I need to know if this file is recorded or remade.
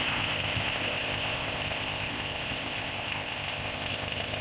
remade